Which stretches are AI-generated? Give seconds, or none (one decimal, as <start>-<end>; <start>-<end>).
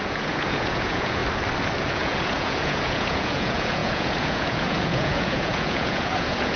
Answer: 0.0-1.2; 1.8-6.6